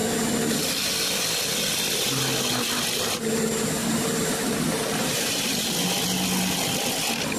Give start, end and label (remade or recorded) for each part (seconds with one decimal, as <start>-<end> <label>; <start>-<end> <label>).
0.0-3.8 recorded; 3.8-5.7 remade; 5.7-7.4 recorded